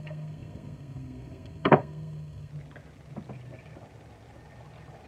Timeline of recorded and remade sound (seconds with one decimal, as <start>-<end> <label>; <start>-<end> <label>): 0.0-2.5 remade; 2.5-5.1 recorded